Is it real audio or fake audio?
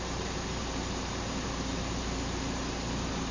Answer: fake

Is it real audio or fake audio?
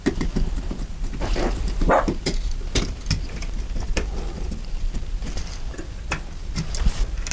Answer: real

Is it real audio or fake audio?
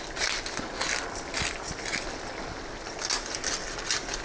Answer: real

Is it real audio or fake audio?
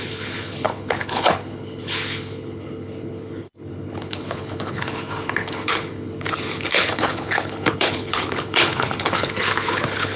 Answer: fake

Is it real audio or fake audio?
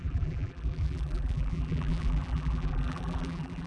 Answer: fake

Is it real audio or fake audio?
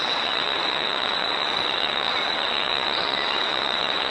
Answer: fake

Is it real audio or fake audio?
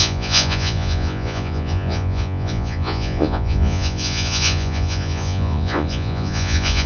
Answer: fake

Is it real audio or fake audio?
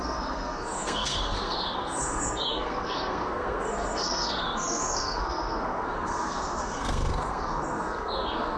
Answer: fake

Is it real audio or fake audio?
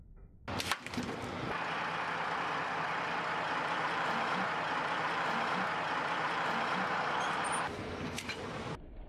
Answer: real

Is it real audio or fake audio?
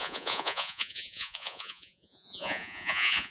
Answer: fake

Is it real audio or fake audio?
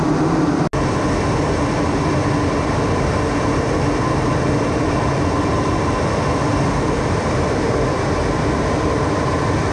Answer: real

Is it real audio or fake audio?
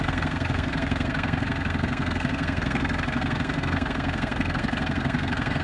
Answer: fake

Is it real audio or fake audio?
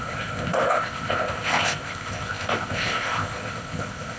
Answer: fake